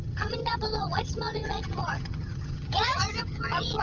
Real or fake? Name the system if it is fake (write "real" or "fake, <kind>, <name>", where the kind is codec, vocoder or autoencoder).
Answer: fake, vocoder, HiFi-GAN